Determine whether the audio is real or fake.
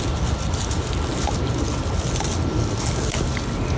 real